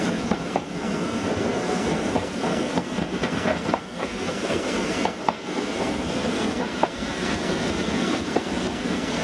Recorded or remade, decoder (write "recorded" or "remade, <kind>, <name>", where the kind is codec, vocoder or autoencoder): remade, codec, SNAC